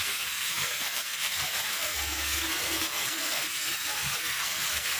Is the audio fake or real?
fake